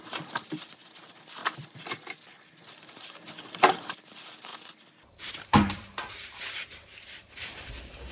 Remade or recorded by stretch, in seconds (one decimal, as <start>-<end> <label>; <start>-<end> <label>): 0.0-1.4 remade; 1.4-2.3 recorded; 2.3-4.5 remade; 4.5-5.1 recorded; 5.1-8.1 remade